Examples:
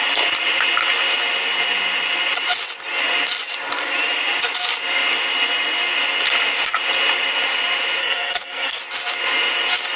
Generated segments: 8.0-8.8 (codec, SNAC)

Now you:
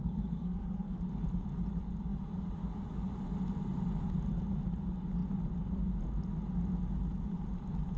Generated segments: 0.0-1.0 (codec, SNAC)